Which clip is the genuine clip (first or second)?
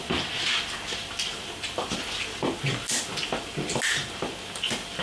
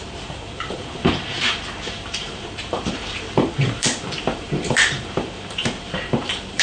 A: first